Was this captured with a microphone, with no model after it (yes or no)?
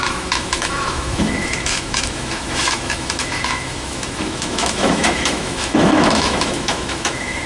no